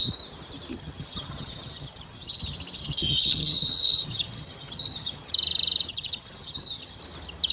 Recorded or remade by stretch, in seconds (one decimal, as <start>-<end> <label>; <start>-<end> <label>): 0.0-0.7 recorded; 0.7-2.4 remade; 2.4-2.8 recorded; 2.8-5.3 remade; 5.3-5.9 recorded; 5.9-7.0 remade; 7.0-7.5 recorded